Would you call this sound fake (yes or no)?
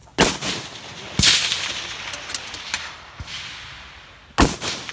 no